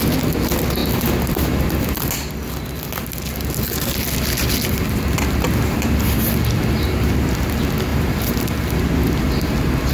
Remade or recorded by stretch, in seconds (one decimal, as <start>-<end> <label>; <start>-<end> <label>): 0.0-7.9 recorded; 7.9-8.4 remade; 8.4-9.9 recorded

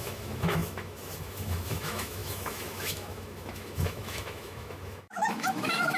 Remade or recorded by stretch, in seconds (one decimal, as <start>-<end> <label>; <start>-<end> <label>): 0.0-6.0 remade